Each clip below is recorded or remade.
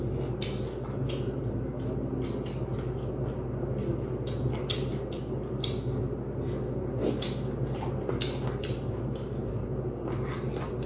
recorded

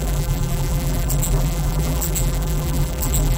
remade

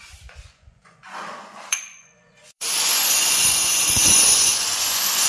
remade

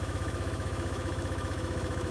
remade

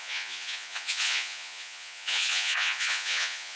remade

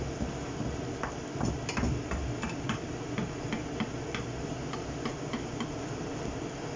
recorded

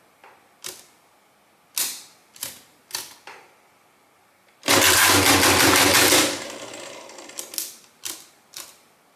recorded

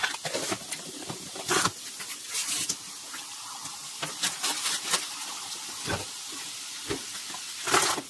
recorded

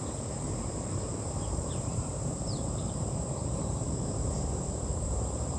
remade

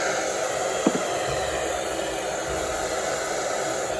recorded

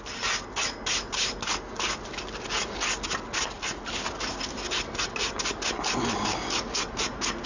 recorded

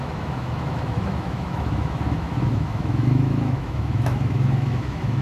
remade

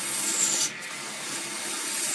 recorded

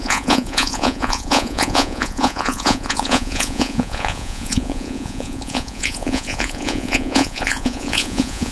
remade